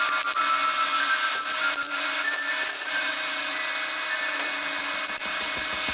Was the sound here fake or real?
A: real